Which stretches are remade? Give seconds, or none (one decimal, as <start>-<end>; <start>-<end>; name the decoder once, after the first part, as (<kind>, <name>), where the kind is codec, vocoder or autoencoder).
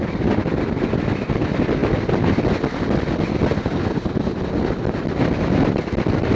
none